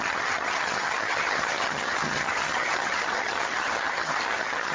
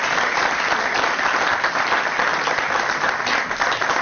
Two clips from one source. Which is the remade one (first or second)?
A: first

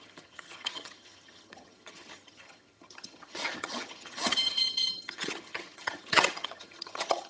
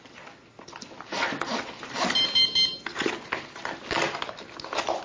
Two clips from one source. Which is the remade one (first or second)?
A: first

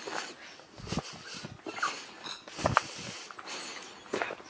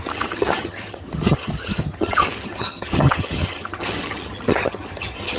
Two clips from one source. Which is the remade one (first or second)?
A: second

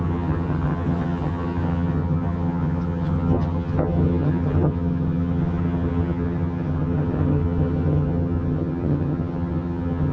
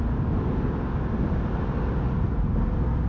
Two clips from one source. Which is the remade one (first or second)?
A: first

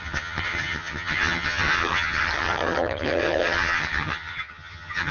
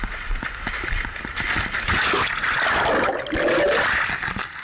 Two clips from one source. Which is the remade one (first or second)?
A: first